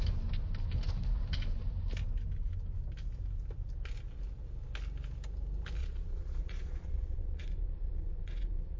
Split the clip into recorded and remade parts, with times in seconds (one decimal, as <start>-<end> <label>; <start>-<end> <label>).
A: 0.0-5.8 recorded; 5.8-8.8 remade

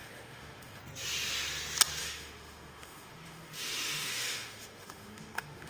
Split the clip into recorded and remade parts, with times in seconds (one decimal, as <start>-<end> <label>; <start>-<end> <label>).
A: 0.0-0.8 remade; 0.8-2.0 recorded; 2.0-5.7 remade